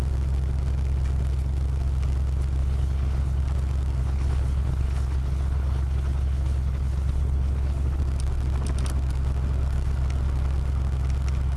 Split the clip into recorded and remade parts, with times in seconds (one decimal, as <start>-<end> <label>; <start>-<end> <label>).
0.0-2.6 recorded; 2.6-3.4 remade; 3.4-4.0 recorded; 4.0-8.0 remade; 8.0-11.6 recorded